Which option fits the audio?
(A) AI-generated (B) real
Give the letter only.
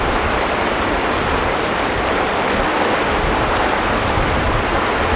B